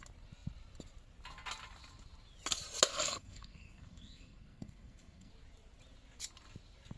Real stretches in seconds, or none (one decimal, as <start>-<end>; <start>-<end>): 0.0-2.9; 5.3-7.0